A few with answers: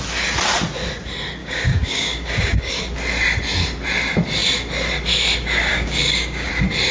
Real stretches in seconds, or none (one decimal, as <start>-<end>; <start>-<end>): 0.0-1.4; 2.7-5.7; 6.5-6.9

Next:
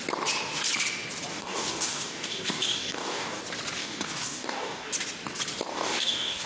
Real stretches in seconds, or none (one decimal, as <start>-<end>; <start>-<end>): 0.0-1.3; 3.4-3.8; 4.9-5.7

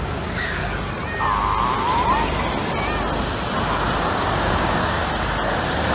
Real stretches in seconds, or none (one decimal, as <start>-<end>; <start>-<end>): 0.6-4.1; 5.0-5.9

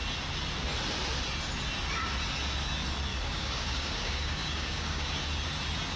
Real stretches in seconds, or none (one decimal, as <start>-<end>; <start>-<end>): 0.0-3.1; 5.1-6.0

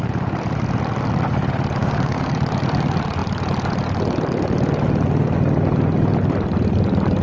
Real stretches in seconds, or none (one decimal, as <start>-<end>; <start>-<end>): 0.0-1.8; 2.3-7.2

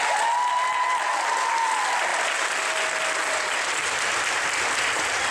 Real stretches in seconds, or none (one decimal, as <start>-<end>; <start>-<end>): 0.0-5.3

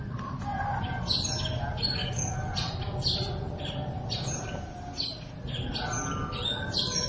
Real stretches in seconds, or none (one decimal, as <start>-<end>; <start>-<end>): 0.0-2.0; 2.5-7.1

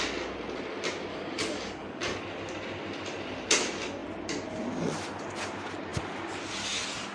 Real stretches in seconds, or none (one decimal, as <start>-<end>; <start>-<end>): 0.0-1.1; 2.2-7.1